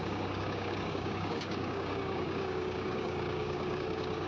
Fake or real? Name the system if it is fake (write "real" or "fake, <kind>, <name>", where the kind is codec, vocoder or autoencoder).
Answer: fake, codec, DAC